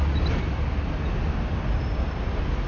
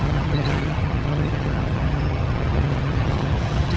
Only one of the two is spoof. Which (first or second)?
second